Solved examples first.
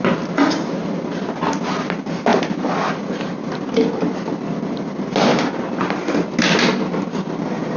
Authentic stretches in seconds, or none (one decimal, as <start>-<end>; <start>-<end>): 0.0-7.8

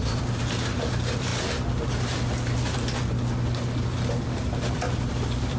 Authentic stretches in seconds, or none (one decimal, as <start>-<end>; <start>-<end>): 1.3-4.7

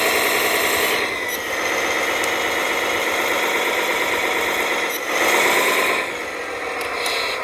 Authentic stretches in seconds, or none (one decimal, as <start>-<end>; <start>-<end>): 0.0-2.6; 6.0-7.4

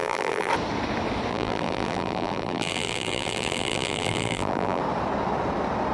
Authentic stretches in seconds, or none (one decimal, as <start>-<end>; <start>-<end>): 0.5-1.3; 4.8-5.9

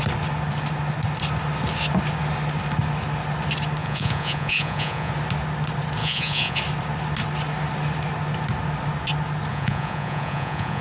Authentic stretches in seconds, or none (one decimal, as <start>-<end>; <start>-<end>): 0.0-3.8; 5.1-6.0; 6.6-9.5